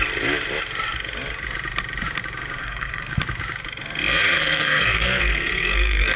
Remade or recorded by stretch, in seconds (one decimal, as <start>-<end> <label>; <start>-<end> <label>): 0.0-2.6 recorded; 2.6-3.2 remade; 3.2-4.4 recorded; 4.4-6.2 remade